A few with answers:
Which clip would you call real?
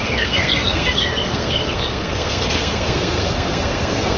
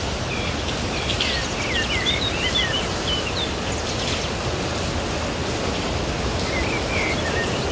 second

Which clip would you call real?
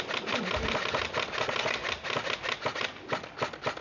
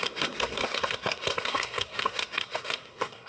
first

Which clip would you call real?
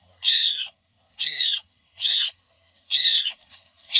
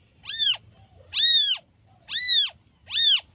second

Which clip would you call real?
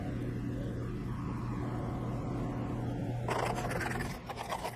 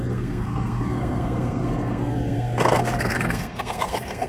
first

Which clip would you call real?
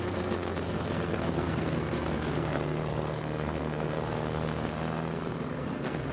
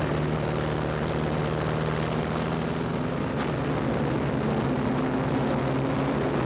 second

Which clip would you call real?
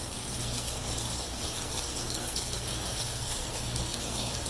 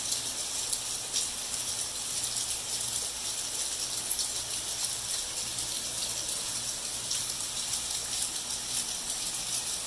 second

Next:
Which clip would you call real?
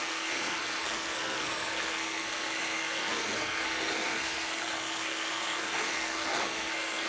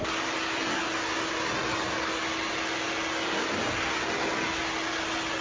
second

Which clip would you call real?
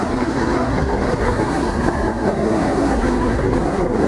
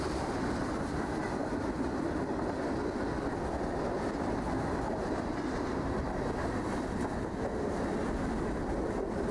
second